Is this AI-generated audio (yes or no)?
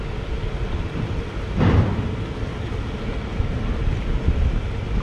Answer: no